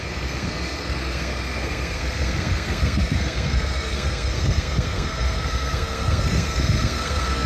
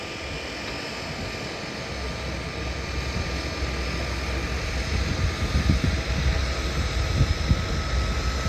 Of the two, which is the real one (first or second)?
second